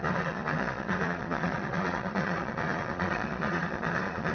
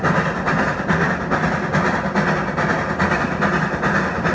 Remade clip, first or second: first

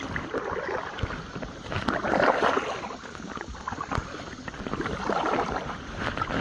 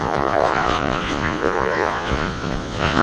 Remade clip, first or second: second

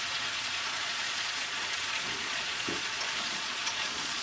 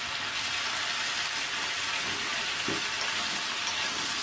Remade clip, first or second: first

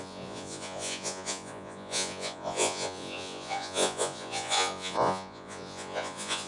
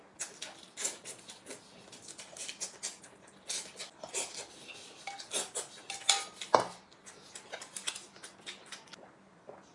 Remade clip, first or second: first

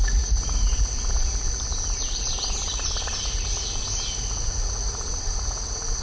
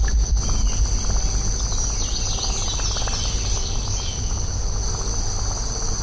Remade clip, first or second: first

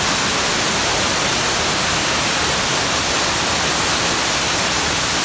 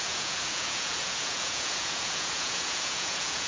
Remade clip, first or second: second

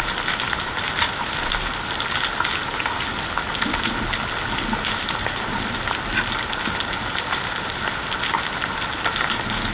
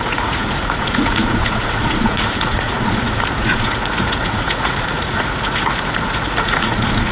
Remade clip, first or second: second